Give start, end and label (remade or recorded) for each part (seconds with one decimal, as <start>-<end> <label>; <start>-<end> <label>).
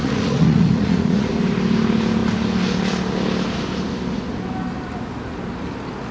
0.0-1.3 remade; 1.3-6.1 recorded